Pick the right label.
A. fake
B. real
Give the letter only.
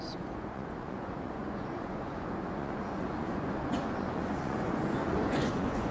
A